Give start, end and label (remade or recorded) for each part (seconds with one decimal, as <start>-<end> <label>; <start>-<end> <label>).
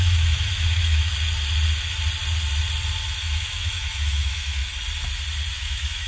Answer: 0.0-1.1 remade; 1.1-3.2 recorded; 3.2-4.6 remade; 4.6-5.5 recorded; 5.5-6.1 remade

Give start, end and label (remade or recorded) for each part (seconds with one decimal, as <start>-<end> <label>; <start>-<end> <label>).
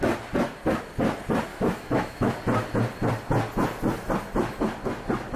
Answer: 0.0-1.5 recorded; 1.5-2.3 remade; 2.3-5.4 recorded